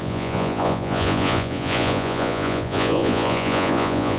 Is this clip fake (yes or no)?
yes